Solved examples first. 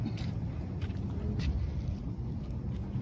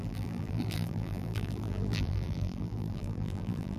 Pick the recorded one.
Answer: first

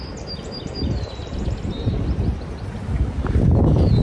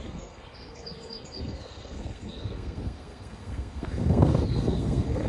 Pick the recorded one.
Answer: first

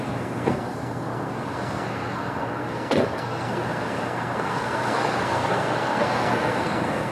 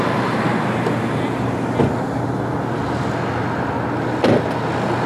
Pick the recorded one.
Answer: second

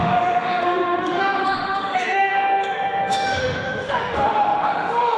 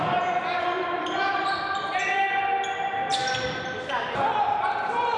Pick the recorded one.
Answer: second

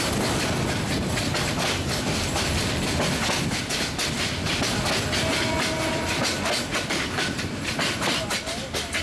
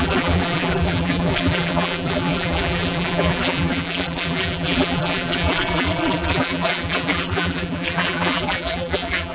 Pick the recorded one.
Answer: first